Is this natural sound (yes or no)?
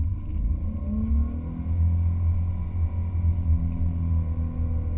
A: yes